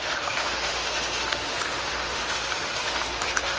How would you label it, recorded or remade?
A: remade